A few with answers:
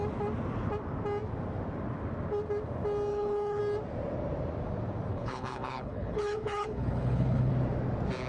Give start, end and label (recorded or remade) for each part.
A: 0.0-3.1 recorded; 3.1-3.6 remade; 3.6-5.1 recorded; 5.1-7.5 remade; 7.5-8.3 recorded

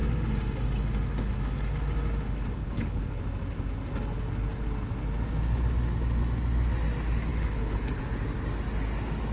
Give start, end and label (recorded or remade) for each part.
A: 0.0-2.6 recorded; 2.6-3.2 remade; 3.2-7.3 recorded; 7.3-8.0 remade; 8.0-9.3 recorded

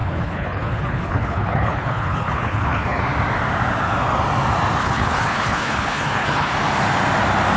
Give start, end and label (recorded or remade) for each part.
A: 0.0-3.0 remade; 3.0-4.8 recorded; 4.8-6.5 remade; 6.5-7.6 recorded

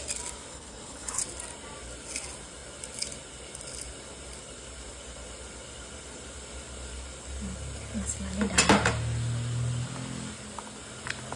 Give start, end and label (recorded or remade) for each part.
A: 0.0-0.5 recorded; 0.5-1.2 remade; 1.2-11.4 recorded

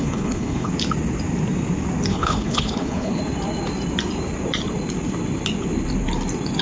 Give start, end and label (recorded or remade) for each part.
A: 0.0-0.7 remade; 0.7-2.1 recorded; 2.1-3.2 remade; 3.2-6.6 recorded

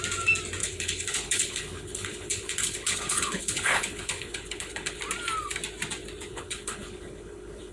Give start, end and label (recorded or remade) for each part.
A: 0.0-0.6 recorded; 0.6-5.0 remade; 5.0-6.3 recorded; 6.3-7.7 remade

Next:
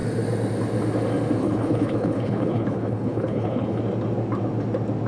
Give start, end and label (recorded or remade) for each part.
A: 0.0-1.4 recorded; 1.4-3.8 remade; 3.8-5.1 recorded

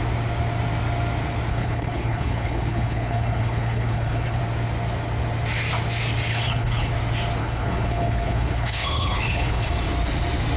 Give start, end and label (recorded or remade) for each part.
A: 0.0-1.5 recorded; 1.5-4.4 remade; 4.4-6.3 recorded; 6.3-6.9 remade; 6.9-7.4 recorded; 7.4-9.7 remade; 9.7-10.6 recorded